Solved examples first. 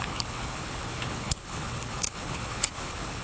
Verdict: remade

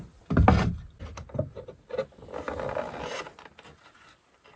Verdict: recorded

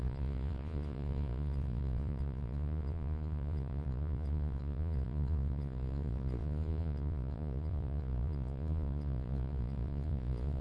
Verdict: remade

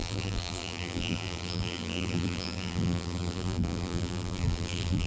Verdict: remade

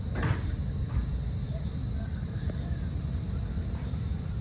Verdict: recorded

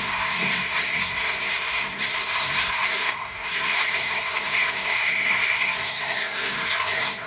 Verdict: remade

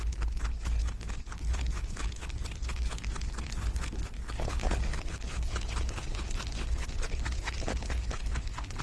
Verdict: remade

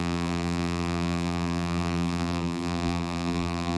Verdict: remade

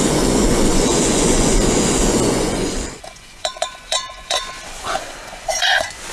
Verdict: remade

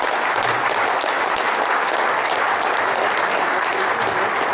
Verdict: recorded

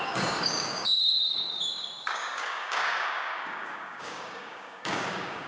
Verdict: remade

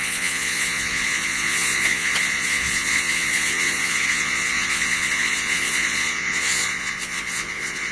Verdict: remade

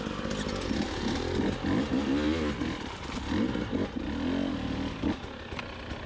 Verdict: recorded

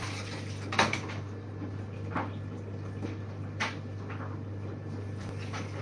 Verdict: recorded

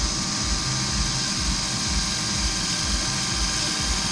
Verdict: recorded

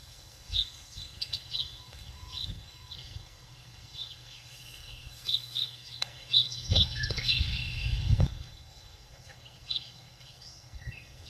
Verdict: remade